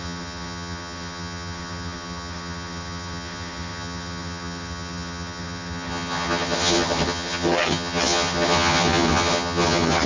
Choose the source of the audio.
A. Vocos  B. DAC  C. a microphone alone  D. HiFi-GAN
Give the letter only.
D